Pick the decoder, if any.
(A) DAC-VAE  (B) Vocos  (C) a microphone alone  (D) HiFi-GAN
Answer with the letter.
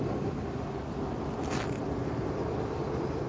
C